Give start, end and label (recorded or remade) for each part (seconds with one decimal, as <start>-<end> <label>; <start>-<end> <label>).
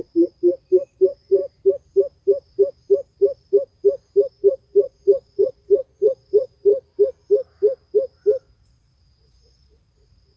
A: 0.0-1.4 remade; 1.4-4.3 recorded; 4.3-6.7 remade; 6.7-8.4 recorded; 8.4-10.4 remade